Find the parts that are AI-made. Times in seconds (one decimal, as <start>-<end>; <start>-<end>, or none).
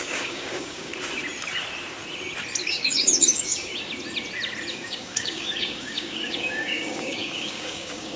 0.0-0.9; 2.6-3.7; 4.7-8.2